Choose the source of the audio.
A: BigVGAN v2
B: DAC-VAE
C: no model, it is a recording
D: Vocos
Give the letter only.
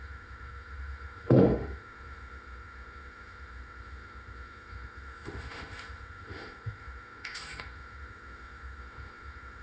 B